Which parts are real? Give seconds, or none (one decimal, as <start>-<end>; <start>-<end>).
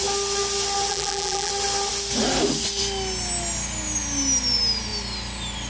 0.0-0.9; 1.5-5.7